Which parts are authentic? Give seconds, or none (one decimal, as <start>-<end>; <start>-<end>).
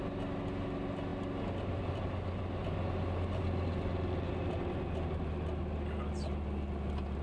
0.0-7.2